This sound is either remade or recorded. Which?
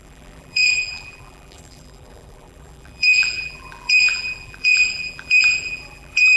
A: remade